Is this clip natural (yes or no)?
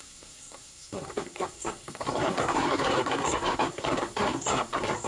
no